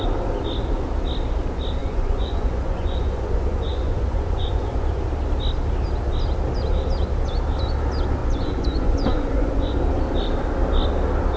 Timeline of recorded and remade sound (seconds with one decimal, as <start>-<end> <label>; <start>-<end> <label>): 0.0-1.8 recorded; 1.8-5.0 remade; 5.0-8.2 recorded; 8.2-9.8 remade; 9.8-11.4 recorded